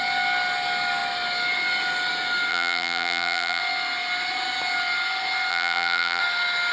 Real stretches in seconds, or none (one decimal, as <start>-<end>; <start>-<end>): 0.0-2.5; 3.6-5.5; 6.2-6.7